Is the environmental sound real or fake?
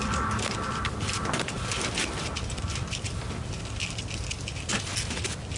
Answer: real